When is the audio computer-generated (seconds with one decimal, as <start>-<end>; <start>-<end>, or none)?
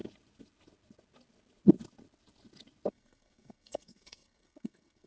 2.9-5.1